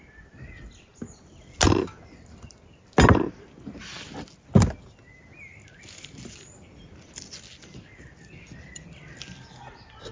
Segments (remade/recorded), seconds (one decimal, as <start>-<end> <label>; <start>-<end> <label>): 0.0-10.1 recorded